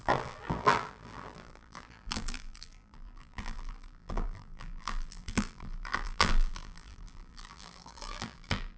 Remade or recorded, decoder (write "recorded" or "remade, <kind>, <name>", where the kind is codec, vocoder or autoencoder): remade, vocoder, BigVGAN v2